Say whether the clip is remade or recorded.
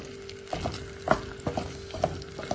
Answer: recorded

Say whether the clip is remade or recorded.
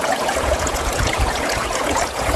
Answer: remade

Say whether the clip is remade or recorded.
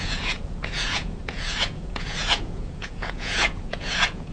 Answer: remade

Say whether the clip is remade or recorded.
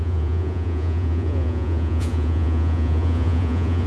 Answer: remade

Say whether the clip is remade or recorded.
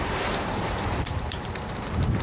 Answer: remade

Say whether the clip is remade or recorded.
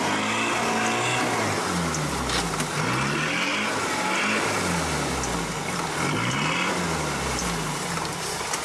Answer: recorded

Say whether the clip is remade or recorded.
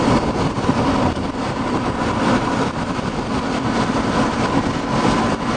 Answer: recorded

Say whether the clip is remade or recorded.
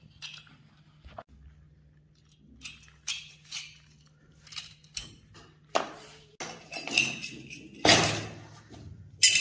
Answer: recorded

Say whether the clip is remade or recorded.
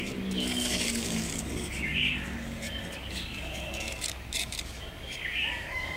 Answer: remade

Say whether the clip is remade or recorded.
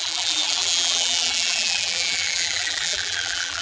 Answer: remade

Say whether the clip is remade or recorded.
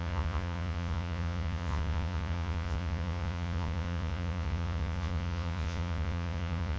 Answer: remade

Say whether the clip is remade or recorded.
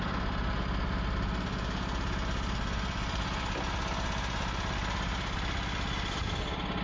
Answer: recorded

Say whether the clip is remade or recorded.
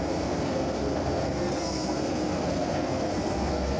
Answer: remade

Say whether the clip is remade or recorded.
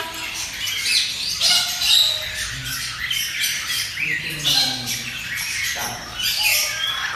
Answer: recorded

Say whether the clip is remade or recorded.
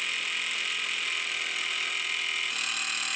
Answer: recorded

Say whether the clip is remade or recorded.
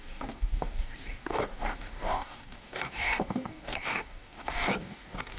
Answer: remade